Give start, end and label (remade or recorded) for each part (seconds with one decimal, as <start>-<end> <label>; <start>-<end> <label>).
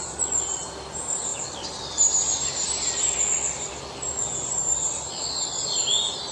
0.0-1.3 recorded; 1.3-5.1 remade; 5.1-6.3 recorded